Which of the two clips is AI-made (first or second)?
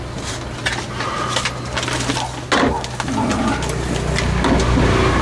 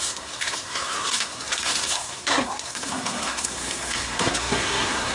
second